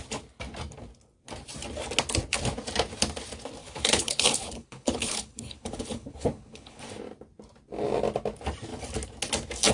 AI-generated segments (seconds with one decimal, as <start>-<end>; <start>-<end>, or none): 3.6-6.8